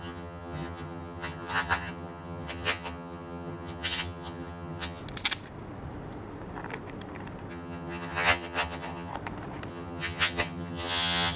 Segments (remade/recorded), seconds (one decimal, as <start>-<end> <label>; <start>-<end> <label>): 0.0-5.0 remade; 5.0-7.5 recorded; 7.5-9.1 remade; 9.1-9.7 recorded; 9.7-11.4 remade